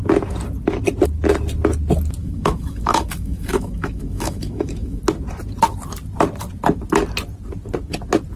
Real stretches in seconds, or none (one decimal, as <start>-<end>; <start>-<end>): 0.0-2.2; 5.0-8.4